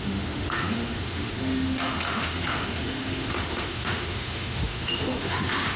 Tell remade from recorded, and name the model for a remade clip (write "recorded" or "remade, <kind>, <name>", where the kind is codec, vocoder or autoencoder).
remade, autoencoder, DAC-VAE